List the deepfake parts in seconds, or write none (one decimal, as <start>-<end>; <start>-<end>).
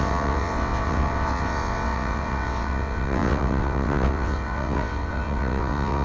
0.0-6.0